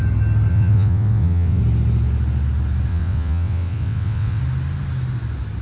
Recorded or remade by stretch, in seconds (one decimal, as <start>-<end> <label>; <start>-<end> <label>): 0.0-0.5 recorded; 0.5-1.6 remade; 1.6-2.9 recorded; 2.9-4.4 remade; 4.4-5.6 recorded